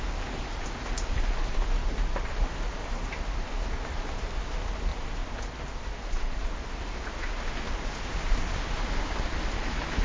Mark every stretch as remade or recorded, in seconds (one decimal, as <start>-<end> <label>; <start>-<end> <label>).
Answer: 0.0-1.8 recorded; 1.8-2.4 remade; 2.4-4.9 recorded; 4.9-6.7 remade; 6.7-10.0 recorded